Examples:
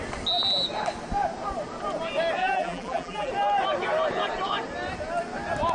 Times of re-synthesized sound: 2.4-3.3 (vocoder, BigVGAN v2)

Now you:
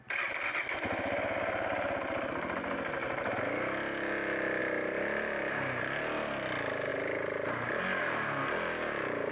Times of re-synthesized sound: none

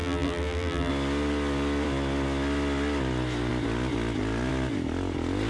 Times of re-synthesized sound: 0.0-0.9 (vocoder, BigVGAN v2)